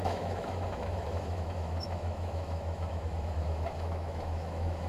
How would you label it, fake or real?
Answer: fake